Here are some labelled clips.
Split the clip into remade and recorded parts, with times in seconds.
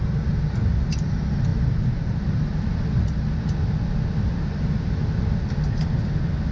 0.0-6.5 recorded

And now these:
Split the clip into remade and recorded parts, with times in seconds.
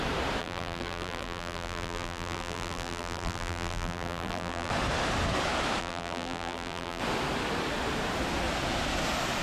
0.0-0.4 recorded; 0.4-4.7 remade; 4.7-5.8 recorded; 5.8-7.0 remade; 7.0-9.4 recorded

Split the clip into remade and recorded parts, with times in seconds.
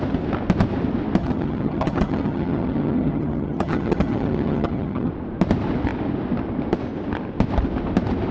0.0-1.2 recorded; 1.2-5.1 remade; 5.1-8.3 recorded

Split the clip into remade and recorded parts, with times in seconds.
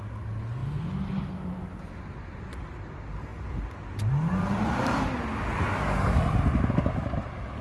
0.0-7.6 recorded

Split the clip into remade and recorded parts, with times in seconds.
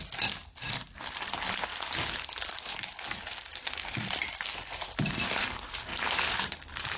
0.0-7.0 recorded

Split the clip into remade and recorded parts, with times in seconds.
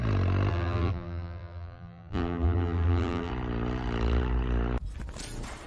0.0-0.5 recorded; 0.5-3.3 remade; 3.3-5.7 recorded